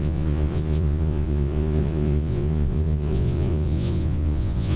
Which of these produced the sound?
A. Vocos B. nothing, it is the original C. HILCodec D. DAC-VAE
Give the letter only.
A